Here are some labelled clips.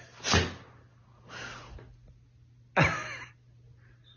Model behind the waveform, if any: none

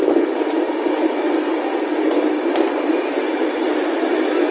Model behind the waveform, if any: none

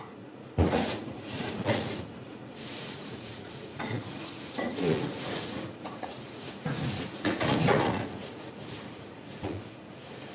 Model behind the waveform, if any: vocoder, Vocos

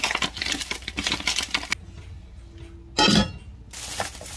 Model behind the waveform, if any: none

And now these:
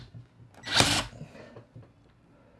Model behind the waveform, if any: none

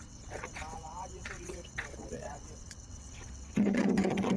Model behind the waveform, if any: vocoder, WaveNeXt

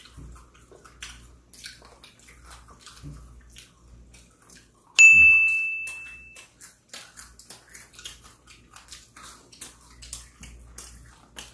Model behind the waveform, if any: none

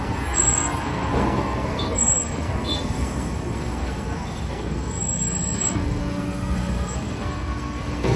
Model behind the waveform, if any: codec, SNAC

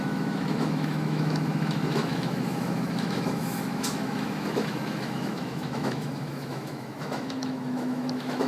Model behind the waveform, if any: autoencoder, DAC-VAE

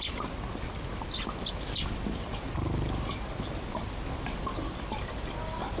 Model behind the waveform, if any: none